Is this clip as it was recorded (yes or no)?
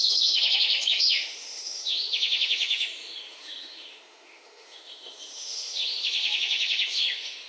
no